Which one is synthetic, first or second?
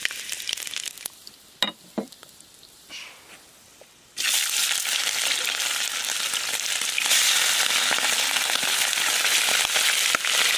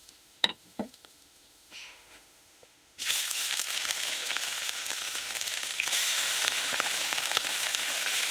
second